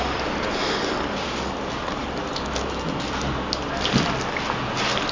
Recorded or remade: recorded